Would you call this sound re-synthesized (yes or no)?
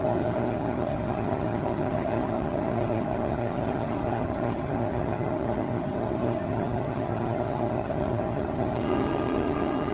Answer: yes